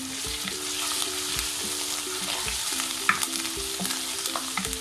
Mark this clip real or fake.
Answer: real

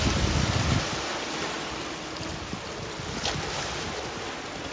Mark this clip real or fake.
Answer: real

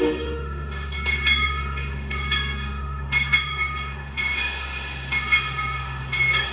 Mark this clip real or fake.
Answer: fake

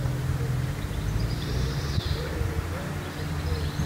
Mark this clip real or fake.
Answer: real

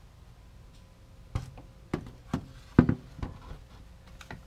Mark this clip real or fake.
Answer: real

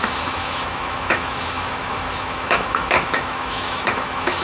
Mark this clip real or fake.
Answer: fake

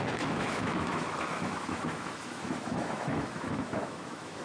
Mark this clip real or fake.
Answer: fake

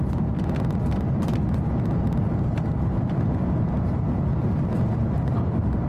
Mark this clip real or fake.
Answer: real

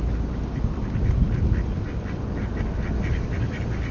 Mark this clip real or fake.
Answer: real